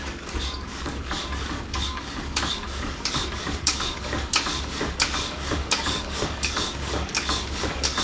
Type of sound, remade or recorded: remade